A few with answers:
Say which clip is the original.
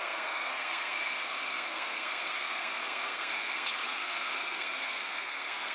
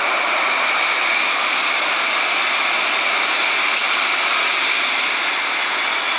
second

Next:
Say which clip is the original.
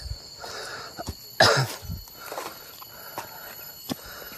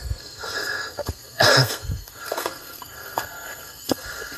first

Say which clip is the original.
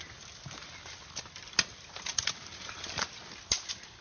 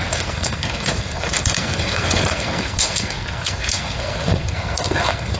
first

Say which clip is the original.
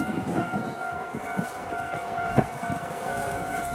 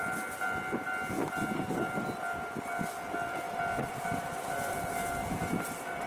second